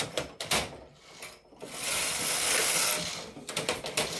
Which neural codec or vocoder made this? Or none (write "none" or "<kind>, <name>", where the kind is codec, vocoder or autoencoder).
none